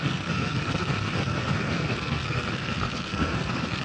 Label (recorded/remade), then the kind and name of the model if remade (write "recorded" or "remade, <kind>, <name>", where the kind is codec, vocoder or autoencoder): remade, codec, SNAC